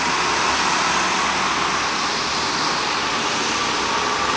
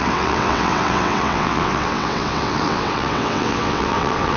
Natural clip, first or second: first